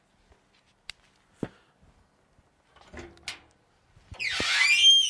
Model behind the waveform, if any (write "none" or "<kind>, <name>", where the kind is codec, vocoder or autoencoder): none